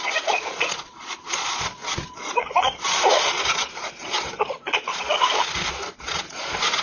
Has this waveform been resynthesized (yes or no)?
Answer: yes